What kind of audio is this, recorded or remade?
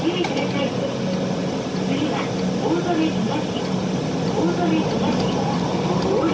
recorded